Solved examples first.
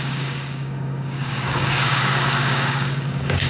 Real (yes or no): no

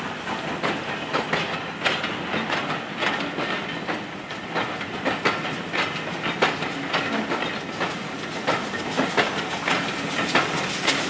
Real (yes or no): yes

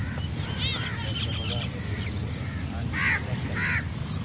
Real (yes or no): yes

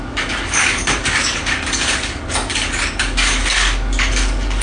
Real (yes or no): no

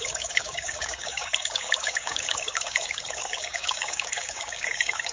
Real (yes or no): no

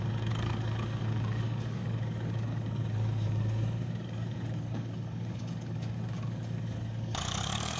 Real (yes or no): no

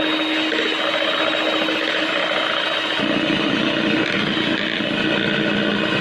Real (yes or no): yes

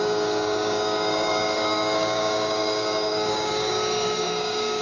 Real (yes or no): no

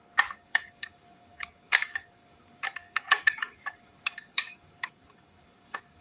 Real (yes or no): no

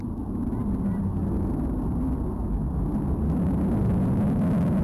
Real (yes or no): yes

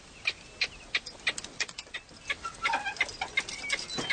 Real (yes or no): yes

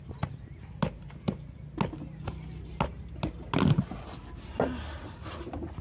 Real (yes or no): yes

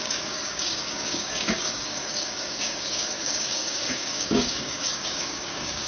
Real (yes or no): no